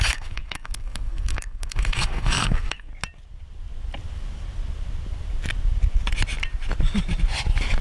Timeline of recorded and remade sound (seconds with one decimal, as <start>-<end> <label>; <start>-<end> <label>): 0.0-2.9 remade; 2.9-7.8 recorded

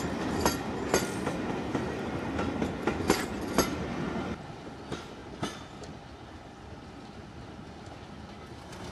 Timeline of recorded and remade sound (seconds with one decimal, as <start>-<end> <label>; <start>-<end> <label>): 0.0-8.9 recorded